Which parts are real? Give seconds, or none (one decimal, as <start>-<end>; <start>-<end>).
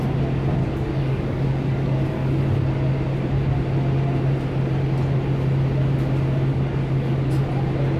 0.0-0.6; 2.4-6.5; 7.3-8.0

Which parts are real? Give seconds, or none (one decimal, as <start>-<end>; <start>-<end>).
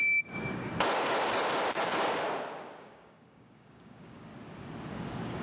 0.7-2.8; 4.3-4.9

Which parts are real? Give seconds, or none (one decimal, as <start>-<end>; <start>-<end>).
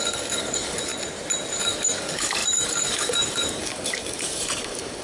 0.9-1.6